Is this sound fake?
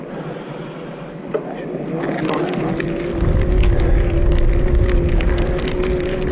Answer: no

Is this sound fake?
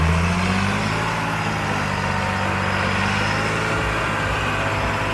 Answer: no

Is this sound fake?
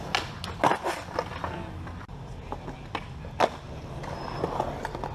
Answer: no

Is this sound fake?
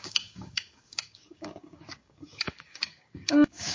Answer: yes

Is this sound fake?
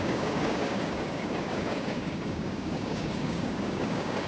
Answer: yes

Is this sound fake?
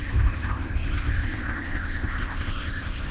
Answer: yes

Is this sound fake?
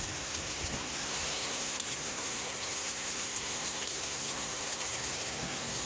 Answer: yes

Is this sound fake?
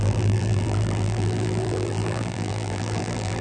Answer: yes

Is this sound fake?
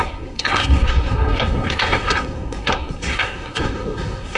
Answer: yes